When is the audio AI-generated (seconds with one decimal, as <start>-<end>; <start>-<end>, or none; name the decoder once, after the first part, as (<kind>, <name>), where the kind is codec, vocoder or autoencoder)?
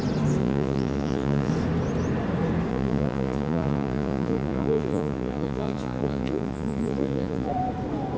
0.4-1.5 (vocoder, Vocos); 2.7-7.5